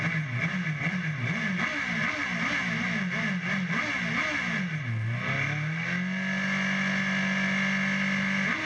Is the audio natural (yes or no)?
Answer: yes